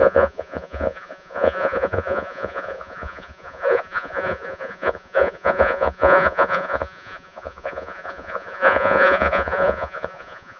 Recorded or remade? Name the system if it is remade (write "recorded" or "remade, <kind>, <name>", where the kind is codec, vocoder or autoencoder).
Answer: remade, vocoder, Vocos